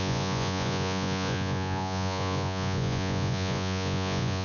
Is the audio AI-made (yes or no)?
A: yes